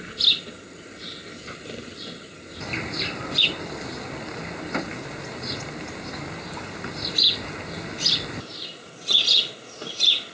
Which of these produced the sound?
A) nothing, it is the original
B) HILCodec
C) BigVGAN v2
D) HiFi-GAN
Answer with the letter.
A